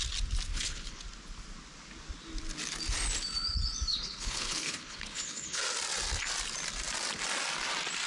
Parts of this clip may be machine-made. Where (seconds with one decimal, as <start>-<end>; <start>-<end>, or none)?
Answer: 0.5-1.0; 3.9-5.6

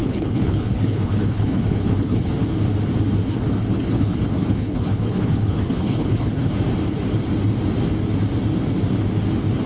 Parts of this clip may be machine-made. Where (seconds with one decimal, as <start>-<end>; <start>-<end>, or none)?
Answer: 0.0-2.3; 3.2-6.5

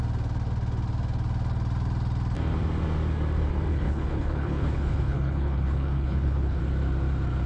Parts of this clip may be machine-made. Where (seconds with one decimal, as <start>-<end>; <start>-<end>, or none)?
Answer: 3.7-6.6

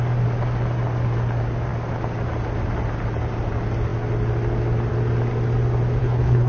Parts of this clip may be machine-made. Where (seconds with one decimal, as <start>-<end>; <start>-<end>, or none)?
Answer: 6.0-6.5

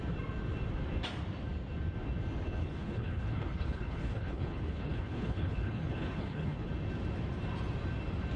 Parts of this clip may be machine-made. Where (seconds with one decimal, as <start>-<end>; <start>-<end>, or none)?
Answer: 2.6-6.7

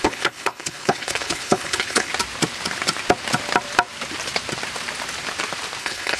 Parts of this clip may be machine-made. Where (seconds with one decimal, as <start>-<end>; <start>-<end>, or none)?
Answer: 0.0-2.1; 5.8-6.2

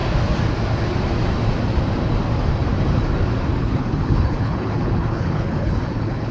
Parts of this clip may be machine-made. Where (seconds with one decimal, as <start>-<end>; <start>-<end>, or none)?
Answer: 3.6-6.3

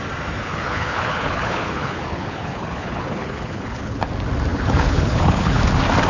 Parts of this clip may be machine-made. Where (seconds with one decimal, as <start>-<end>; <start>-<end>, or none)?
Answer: 0.4-4.1; 4.5-5.6